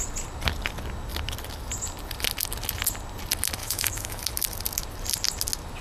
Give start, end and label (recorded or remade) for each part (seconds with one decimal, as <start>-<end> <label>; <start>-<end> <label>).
0.0-3.6 recorded; 3.6-4.2 remade; 4.2-5.8 recorded